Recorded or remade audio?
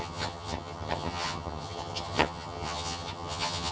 remade